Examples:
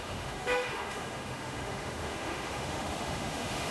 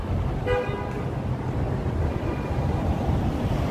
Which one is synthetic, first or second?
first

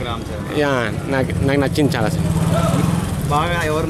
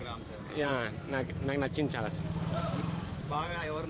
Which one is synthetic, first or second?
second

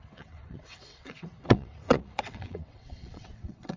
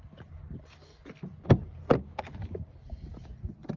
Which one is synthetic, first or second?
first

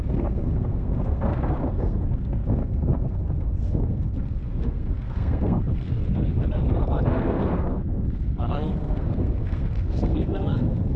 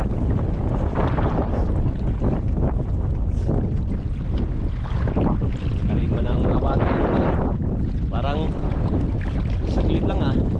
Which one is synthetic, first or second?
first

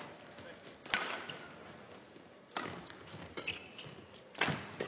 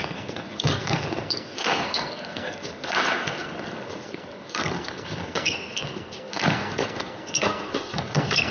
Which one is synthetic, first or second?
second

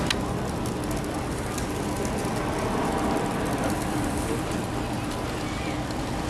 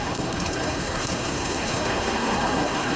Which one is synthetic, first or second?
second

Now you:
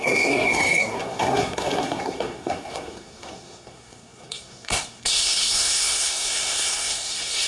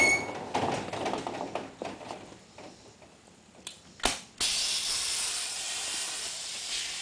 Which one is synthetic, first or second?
first